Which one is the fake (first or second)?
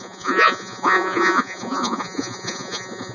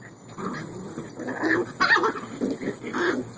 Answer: first